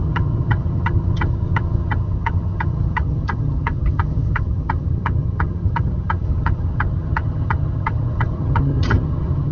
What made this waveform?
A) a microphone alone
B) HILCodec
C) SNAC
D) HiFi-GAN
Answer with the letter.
D